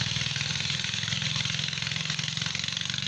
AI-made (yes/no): no